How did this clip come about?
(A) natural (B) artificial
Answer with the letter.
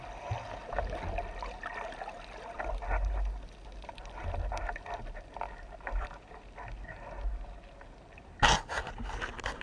A